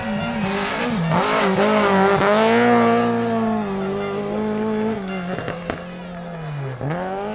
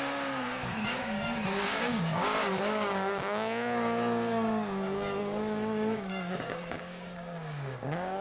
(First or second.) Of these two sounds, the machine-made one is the second